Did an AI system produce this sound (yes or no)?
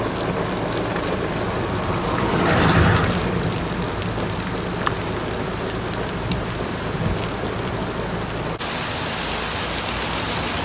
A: no